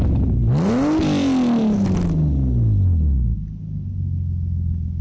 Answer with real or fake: real